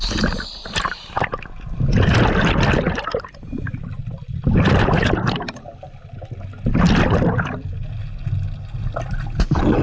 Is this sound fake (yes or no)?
no